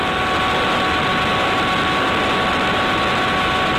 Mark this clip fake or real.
real